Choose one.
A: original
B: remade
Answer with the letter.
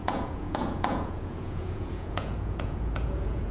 B